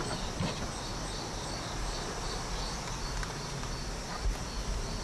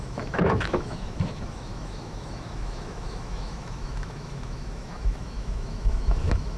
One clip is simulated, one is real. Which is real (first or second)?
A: first